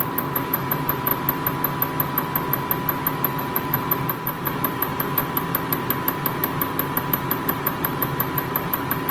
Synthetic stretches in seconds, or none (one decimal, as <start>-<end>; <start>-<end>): 0.0-1.1; 3.4-5.2; 7.0-9.1